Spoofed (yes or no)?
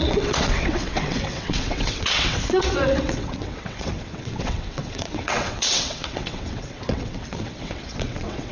yes